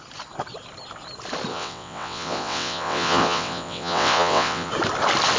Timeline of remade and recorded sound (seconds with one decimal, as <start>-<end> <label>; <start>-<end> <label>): 0.0-1.5 recorded; 1.5-4.7 remade; 4.7-5.4 recorded